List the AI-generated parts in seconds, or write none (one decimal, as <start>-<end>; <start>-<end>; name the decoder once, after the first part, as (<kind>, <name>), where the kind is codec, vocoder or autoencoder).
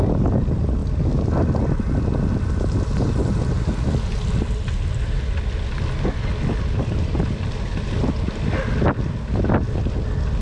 none